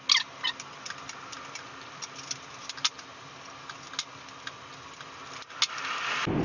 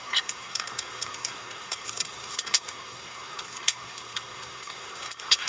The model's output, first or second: second